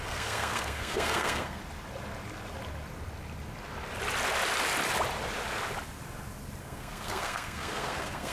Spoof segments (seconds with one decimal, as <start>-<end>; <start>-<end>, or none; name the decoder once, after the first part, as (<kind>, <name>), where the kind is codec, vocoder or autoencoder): 0.0-1.6 (codec, SNAC); 6.6-8.3